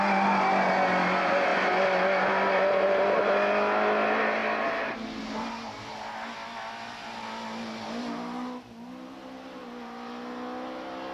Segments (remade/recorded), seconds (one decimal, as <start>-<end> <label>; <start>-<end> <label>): 0.0-1.5 recorded; 1.5-2.3 remade; 2.3-11.1 recorded

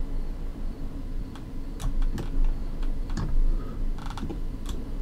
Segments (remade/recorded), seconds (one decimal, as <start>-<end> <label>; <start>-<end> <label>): 0.0-0.5 recorded; 0.5-1.2 remade; 1.2-2.6 recorded; 2.6-3.6 remade; 3.6-4.3 recorded; 4.3-5.0 remade

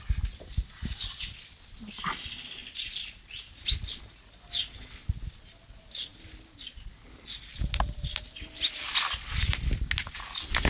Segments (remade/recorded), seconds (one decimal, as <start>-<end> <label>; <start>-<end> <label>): 0.0-6.1 recorded; 6.1-8.6 remade; 8.6-10.7 recorded

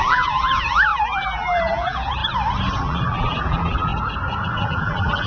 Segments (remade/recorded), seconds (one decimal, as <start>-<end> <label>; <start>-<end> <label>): 0.0-2.2 remade; 2.2-2.8 recorded; 2.8-3.9 remade; 3.9-4.6 recorded; 4.6-5.3 remade

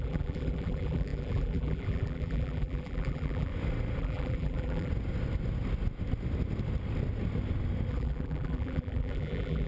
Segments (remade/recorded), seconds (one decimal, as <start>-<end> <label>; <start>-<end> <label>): 0.0-3.5 remade; 3.5-4.0 recorded; 4.0-4.9 remade; 4.9-7.9 recorded; 7.9-9.7 remade

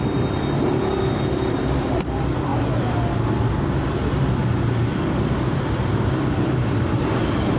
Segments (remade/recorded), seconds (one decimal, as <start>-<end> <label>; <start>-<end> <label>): 0.0-4.9 recorded; 4.9-5.9 remade; 5.9-7.6 recorded